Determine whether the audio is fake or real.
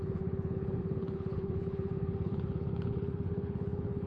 fake